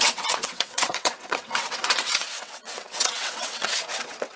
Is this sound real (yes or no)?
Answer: no